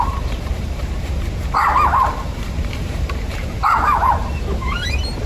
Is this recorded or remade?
remade